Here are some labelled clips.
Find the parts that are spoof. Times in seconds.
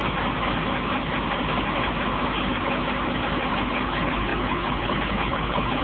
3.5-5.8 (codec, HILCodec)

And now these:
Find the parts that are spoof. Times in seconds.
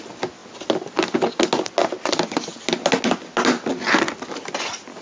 none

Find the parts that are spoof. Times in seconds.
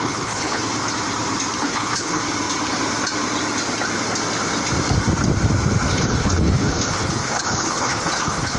0.0-0.6 (codec, HILCodec); 1.6-2.2; 5.9-8.6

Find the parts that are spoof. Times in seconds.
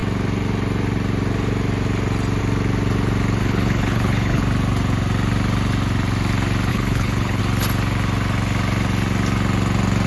3.4-4.4 (codec, HILCodec); 6.7-7.4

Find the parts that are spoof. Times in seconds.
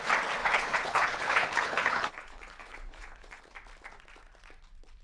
0.4-3.4 (codec, HILCodec)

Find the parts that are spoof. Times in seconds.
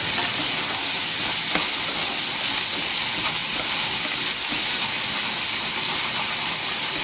none